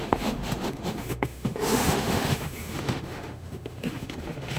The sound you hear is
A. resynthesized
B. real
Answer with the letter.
A